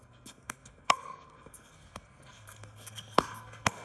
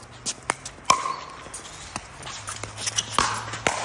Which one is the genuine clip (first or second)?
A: second